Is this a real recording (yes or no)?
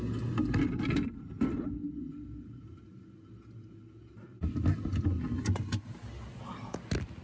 yes